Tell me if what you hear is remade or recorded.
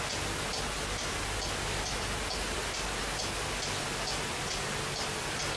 recorded